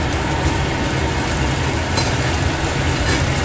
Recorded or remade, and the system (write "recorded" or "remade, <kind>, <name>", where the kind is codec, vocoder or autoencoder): recorded